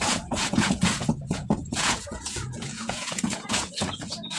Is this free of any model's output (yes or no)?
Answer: no